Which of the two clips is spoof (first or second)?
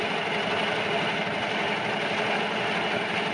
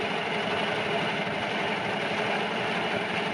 second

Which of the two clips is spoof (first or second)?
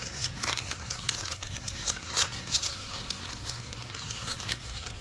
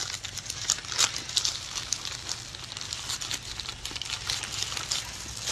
first